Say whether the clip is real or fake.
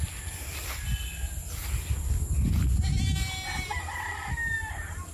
real